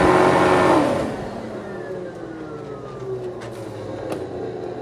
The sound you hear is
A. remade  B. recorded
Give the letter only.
B